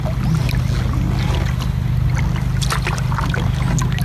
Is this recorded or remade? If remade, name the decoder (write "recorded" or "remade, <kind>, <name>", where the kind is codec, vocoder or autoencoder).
recorded